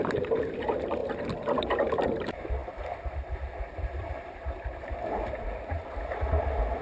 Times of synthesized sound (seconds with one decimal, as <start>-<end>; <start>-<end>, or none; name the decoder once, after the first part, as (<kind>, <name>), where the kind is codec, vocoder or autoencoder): 0.0-1.0 (vocoder, BigVGAN v2); 1.6-2.6; 3.7-5.8